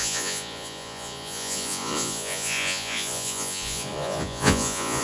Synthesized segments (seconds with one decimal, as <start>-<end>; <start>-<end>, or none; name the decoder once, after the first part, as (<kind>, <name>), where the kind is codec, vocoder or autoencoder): 0.0-5.0 (vocoder, Vocos)